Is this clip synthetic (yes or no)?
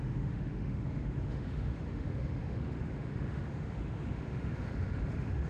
yes